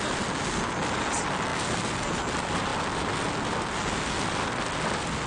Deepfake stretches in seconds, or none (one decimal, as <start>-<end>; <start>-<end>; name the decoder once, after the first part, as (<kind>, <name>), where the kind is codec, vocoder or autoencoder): none